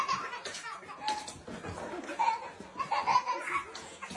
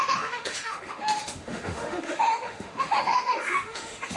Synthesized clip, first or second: second